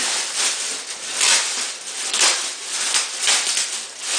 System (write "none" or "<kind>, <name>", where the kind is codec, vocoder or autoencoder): none